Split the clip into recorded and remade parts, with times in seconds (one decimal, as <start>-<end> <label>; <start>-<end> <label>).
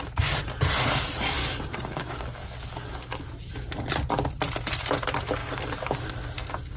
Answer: 0.0-1.4 recorded; 1.4-3.5 remade; 3.5-5.4 recorded; 5.4-6.0 remade; 6.0-6.8 recorded